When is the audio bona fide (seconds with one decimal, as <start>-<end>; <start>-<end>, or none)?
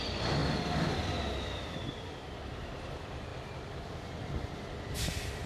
0.4-2.5